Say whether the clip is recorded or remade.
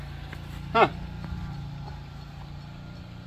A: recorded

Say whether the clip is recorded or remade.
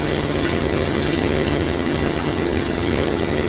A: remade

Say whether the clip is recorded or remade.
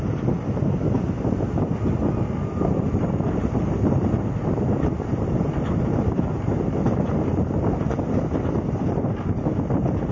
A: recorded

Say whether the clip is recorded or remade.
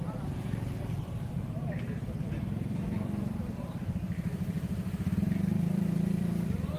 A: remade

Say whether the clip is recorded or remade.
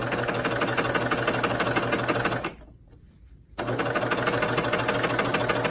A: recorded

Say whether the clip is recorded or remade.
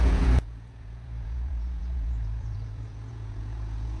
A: remade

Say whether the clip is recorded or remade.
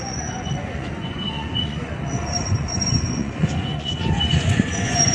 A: remade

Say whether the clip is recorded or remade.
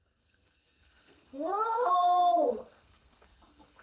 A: remade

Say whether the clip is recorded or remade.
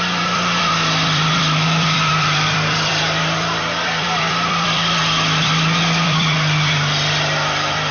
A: remade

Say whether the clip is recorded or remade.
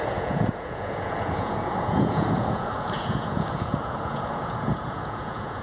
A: remade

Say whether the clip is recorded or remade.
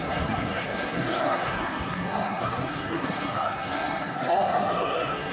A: remade